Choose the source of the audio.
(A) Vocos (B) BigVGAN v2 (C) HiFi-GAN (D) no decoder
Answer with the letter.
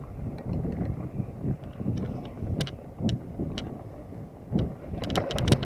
D